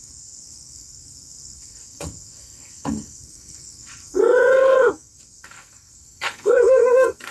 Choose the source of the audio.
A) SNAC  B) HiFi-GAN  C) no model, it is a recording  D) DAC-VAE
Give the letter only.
A